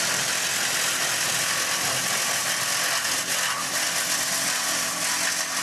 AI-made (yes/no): no